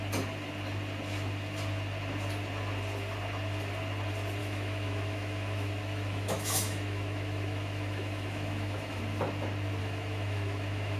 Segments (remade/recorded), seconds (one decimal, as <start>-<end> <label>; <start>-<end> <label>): 0.0-4.4 recorded; 4.4-9.0 remade; 9.0-9.8 recorded; 9.8-11.0 remade